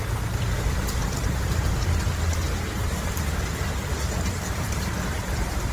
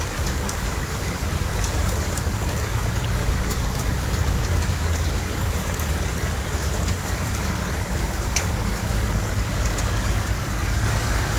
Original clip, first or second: first